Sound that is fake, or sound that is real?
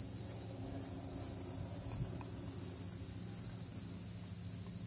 real